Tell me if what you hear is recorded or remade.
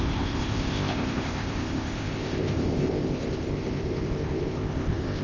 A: remade